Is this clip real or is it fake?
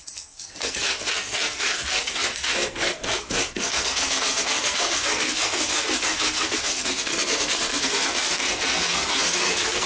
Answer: fake